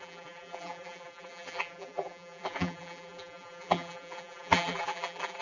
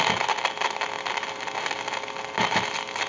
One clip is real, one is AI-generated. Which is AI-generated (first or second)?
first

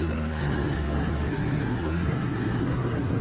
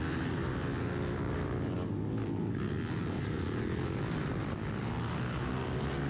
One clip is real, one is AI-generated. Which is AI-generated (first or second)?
first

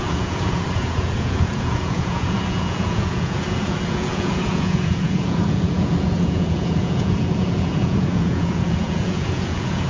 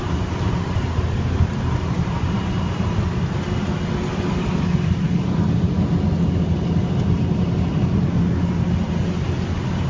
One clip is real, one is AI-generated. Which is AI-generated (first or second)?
first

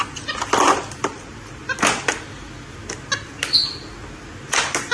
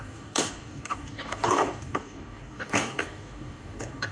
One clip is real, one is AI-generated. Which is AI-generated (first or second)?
second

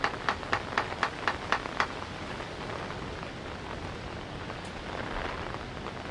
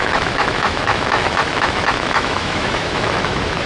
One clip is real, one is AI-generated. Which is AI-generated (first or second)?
second